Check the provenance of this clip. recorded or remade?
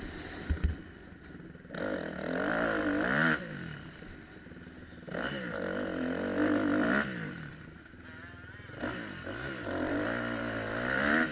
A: recorded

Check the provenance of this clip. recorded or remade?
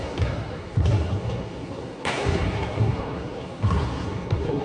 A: remade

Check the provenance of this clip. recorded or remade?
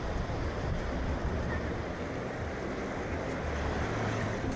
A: recorded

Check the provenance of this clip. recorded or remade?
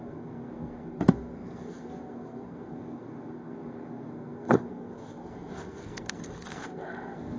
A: remade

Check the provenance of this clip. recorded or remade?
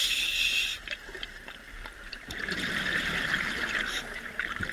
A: recorded